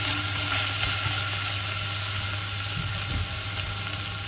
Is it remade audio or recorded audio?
recorded